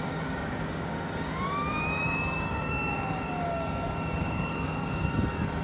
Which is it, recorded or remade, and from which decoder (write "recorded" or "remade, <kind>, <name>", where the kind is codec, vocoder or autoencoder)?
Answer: remade, codec, DAC